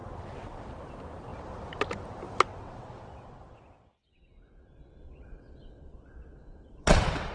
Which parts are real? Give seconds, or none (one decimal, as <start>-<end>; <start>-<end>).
0.6-2.5